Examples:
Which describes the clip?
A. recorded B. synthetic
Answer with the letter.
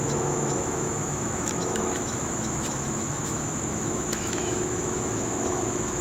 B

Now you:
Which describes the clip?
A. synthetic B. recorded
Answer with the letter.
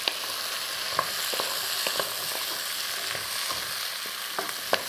B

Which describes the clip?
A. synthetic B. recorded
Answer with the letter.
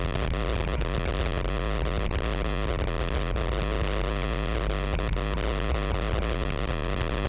B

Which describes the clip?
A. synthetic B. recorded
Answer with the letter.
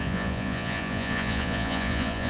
A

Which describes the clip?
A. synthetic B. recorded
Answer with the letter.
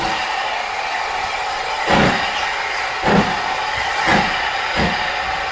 B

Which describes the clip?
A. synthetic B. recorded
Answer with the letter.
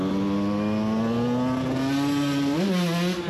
B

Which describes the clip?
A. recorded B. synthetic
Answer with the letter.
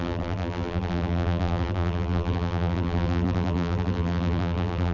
B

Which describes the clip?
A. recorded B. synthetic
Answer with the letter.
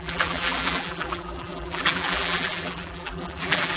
B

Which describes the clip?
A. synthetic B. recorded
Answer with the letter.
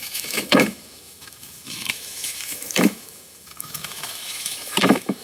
A